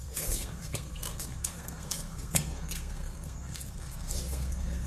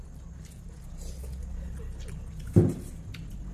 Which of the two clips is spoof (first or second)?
first